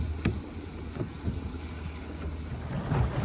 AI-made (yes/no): no